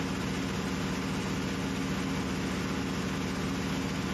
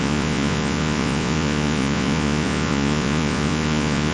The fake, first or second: second